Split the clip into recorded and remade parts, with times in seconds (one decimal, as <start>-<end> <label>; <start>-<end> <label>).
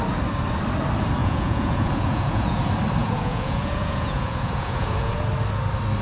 0.0-1.2 recorded; 1.2-2.6 remade; 2.6-3.0 recorded; 3.0-5.2 remade; 5.2-6.0 recorded